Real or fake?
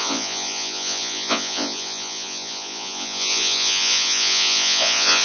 fake